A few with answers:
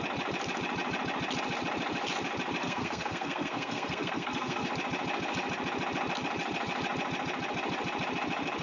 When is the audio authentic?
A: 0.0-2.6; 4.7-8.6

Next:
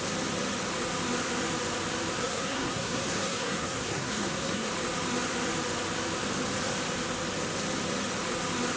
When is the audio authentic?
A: 0.0-2.2; 4.7-8.8

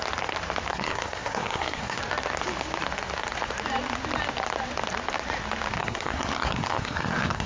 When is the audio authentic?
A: 0.0-0.7; 2.0-5.8

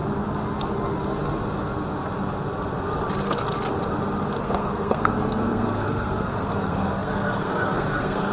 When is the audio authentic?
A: 0.0-4.4

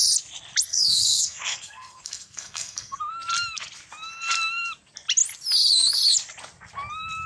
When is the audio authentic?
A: 0.0-0.7; 3.1-7.3